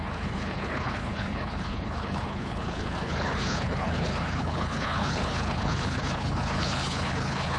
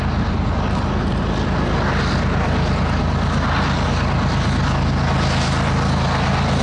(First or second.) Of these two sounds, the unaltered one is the second